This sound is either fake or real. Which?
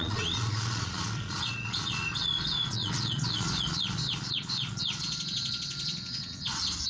fake